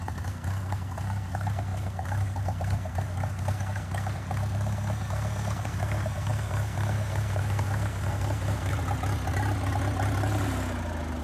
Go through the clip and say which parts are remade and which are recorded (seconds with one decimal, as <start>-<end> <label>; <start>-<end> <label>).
0.0-8.7 remade; 8.7-11.2 recorded